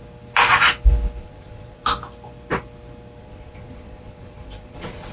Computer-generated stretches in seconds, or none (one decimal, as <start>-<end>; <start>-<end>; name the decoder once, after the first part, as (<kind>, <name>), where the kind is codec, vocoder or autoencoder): 1.2-1.8 (vocoder, Vocos); 3.2-5.1